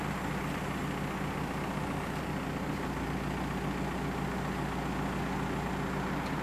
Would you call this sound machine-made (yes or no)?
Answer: no